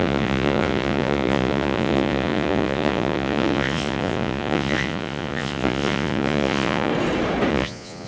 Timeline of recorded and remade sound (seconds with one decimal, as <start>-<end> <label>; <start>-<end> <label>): 0.0-6.9 remade; 6.9-7.5 recorded; 7.5-8.1 remade